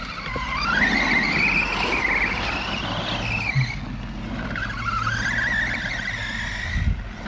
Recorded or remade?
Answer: recorded